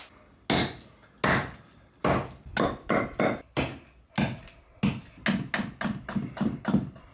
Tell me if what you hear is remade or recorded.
recorded